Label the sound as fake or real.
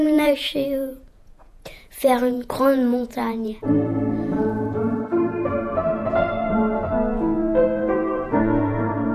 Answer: fake